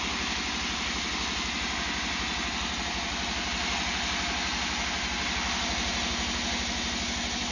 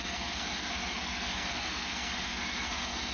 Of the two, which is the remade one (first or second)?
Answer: second